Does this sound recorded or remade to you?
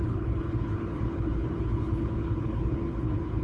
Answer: remade